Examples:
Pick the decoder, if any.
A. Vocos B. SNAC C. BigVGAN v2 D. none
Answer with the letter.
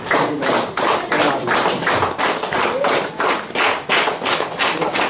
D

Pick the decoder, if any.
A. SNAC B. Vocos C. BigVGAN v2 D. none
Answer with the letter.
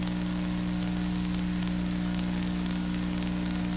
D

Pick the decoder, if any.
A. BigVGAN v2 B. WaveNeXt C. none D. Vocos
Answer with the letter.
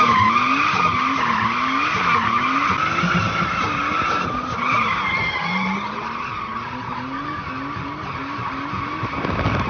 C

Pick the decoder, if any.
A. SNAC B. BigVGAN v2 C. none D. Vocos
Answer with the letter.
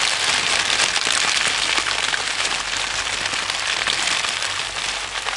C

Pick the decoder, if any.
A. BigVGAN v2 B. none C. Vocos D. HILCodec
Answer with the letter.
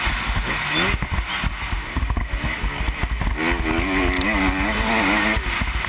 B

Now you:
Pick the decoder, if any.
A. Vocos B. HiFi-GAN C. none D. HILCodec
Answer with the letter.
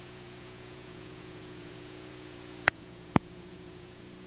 A